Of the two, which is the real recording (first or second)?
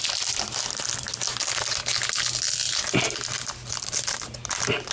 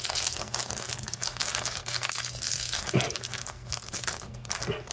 first